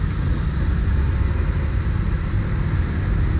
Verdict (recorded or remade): recorded